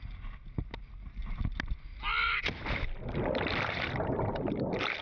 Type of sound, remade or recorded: recorded